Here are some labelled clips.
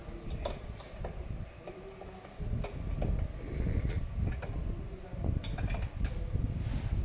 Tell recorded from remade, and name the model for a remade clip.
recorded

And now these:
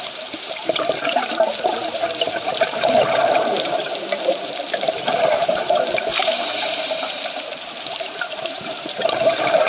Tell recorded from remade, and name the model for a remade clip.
remade, vocoder, BigVGAN v2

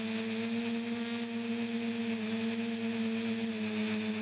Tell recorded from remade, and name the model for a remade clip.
recorded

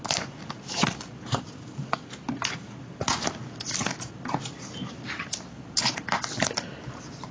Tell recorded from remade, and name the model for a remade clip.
recorded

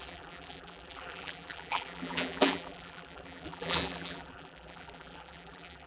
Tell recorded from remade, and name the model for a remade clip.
remade, vocoder, BigVGAN v2